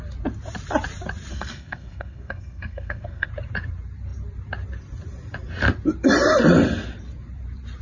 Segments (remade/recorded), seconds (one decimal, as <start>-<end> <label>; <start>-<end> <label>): 0.0-1.3 recorded; 1.3-3.3 remade; 3.3-7.8 recorded